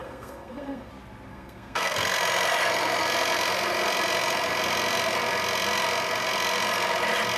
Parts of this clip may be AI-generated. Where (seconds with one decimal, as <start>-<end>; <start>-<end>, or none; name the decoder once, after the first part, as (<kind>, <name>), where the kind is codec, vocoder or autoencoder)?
0.0-0.9 (codec, SNAC); 1.3-2.2